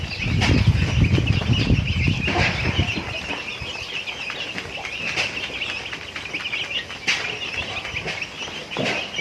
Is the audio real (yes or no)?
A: yes